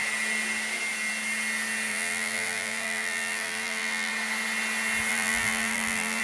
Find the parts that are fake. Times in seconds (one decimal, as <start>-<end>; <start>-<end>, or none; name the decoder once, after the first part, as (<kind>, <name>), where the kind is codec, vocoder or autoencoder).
1.9-4.1 (vocoder, BigVGAN v2); 5.1-6.2